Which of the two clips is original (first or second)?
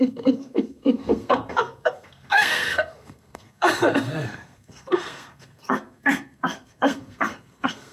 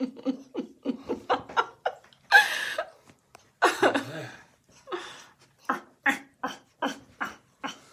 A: second